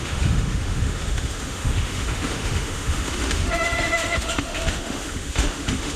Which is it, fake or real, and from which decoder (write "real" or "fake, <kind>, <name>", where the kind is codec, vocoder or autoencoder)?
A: fake, autoencoder, DAC-VAE